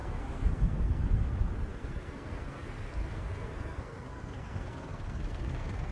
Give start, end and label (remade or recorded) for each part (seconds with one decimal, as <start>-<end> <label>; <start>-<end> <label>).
0.0-5.9 remade

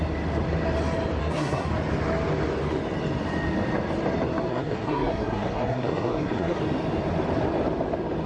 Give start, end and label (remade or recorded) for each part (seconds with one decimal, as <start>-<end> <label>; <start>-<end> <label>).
0.0-1.2 recorded; 1.2-1.7 remade; 1.7-4.5 recorded; 4.5-6.6 remade; 6.6-8.3 recorded

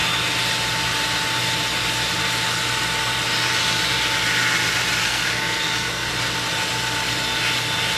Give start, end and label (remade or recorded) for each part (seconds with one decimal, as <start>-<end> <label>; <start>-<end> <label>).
0.0-5.0 recorded; 5.0-6.1 remade; 6.1-8.0 recorded

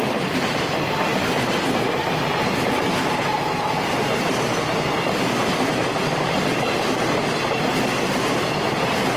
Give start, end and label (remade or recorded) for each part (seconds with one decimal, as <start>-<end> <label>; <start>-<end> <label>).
0.0-9.2 recorded

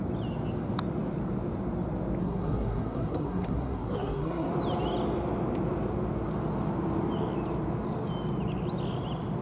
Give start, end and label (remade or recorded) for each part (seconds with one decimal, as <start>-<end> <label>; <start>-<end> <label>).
0.0-2.2 recorded; 2.2-4.5 remade; 4.5-9.4 recorded